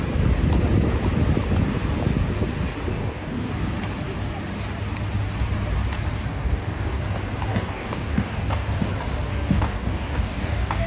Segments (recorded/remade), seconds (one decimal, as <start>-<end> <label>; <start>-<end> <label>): 0.0-2.9 recorded; 2.9-3.5 remade; 3.5-6.3 recorded; 6.3-7.0 remade; 7.0-7.5 recorded; 7.5-8.9 remade; 8.9-9.3 recorded; 9.3-10.9 remade